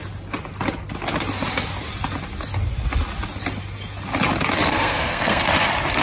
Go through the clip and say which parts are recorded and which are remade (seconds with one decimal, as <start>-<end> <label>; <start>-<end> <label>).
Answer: 0.0-4.7 recorded; 4.7-5.4 remade; 5.4-6.0 recorded